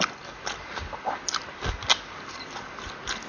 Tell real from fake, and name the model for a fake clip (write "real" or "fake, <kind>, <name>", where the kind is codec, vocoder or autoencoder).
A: real